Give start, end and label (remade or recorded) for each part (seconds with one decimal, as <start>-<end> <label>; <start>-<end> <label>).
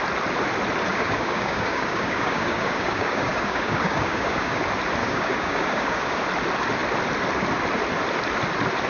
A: 0.0-0.9 recorded; 0.9-4.6 remade; 4.6-5.0 recorded; 5.0-6.2 remade; 6.2-8.9 recorded